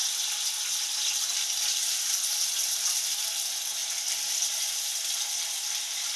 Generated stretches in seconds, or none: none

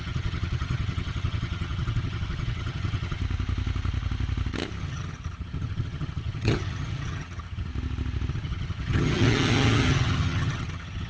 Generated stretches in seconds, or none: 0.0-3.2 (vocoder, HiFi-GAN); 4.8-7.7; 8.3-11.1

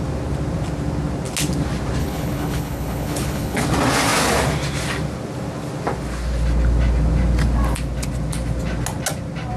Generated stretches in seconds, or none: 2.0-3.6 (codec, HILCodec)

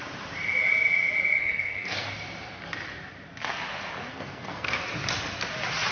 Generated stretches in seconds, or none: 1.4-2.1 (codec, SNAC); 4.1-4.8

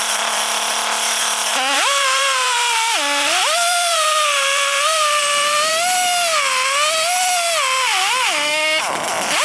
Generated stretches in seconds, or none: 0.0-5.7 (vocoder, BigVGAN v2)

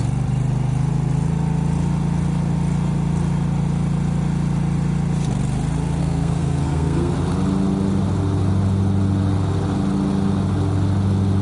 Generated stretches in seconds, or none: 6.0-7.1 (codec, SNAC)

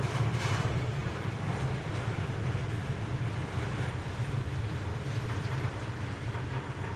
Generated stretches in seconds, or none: 1.0-1.8 (vocoder, BigVGAN v2)